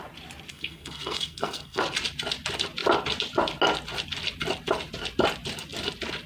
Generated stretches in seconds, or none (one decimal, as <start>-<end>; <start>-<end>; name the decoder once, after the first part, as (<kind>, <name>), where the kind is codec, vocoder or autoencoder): 0.5-1.8 (codec, SNAC)